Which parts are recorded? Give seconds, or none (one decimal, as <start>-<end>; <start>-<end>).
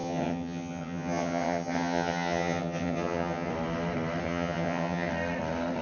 3.5-4.2; 5.1-5.8